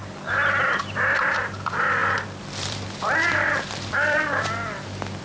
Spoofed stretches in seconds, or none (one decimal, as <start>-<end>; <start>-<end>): 0.8-5.2